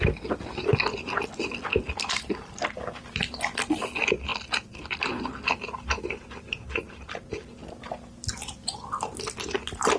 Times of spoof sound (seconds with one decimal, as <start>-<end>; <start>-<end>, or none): none